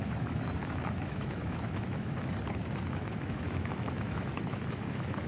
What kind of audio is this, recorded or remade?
remade